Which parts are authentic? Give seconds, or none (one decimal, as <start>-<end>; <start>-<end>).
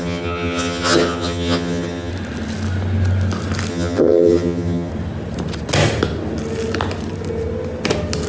2.1-3.7; 4.9-8.3